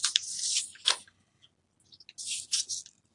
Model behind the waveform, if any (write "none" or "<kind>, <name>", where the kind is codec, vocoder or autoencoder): none